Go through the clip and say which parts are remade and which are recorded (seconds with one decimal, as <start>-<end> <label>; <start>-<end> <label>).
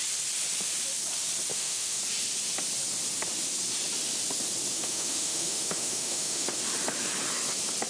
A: 0.0-1.5 recorded; 1.5-2.0 remade; 2.0-4.7 recorded; 4.7-6.6 remade; 6.6-7.9 recorded